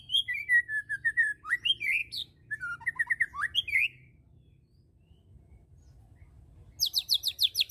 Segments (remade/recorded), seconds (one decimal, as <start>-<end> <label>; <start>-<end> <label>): 0.0-7.7 recorded

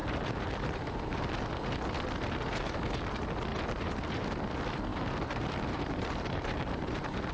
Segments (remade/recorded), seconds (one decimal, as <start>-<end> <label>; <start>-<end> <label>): 0.0-1.4 remade; 1.4-3.5 recorded; 3.5-4.3 remade; 4.3-4.9 recorded; 4.9-7.3 remade

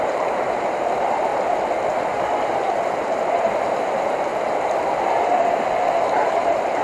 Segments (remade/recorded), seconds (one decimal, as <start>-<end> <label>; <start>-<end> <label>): 0.0-1.3 remade; 1.3-2.5 recorded; 2.5-4.3 remade; 4.3-5.0 recorded; 5.0-6.8 remade

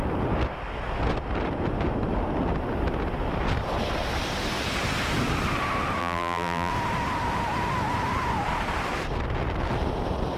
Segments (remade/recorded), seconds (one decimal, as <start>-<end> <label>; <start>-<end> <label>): 0.0-6.0 recorded; 6.0-6.7 remade; 6.7-10.4 recorded